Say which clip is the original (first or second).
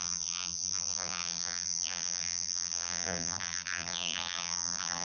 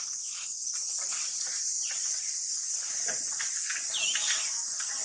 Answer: second